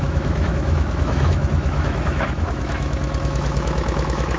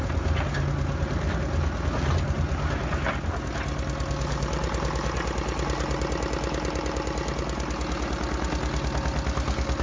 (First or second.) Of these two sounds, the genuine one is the second